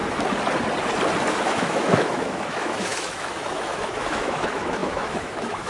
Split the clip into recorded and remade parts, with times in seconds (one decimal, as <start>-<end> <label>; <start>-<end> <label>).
0.0-1.3 recorded; 1.3-5.7 remade